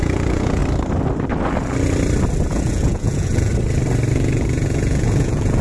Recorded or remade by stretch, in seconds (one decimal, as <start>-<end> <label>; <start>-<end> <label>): 0.0-0.6 remade; 0.6-2.5 recorded; 2.5-3.5 remade; 3.5-4.1 recorded; 4.1-5.6 remade